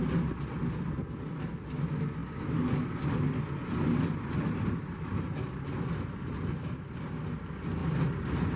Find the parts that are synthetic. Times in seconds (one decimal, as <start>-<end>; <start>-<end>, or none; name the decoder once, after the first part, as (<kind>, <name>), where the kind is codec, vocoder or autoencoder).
none